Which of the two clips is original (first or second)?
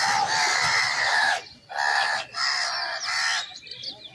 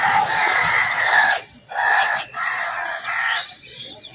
first